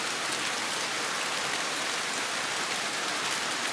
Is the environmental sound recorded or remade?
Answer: recorded